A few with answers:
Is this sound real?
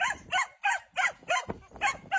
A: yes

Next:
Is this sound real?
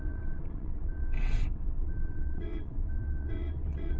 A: no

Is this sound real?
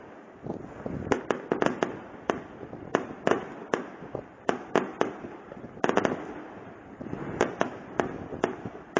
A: yes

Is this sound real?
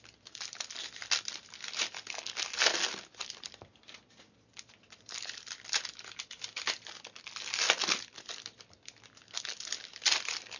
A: yes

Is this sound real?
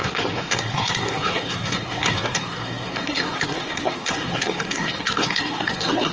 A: no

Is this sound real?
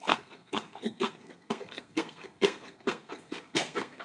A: no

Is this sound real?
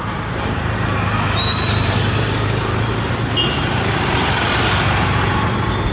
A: no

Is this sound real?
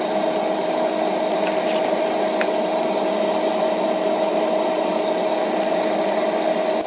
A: yes